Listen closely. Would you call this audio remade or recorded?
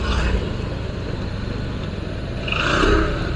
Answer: recorded